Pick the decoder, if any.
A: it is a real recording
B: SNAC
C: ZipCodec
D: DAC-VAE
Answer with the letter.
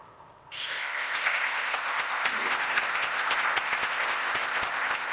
C